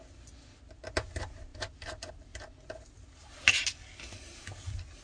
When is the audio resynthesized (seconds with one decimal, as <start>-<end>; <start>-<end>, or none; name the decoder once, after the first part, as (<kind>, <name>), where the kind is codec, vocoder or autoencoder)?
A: none